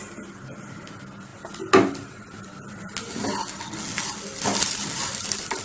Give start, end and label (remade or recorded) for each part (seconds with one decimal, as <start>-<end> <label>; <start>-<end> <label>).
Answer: 0.0-5.6 recorded